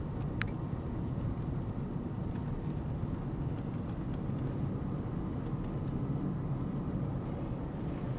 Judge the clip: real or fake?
real